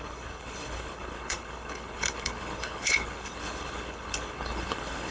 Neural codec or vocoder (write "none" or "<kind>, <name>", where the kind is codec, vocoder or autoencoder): codec, HILCodec